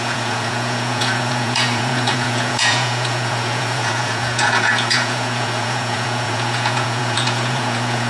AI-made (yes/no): yes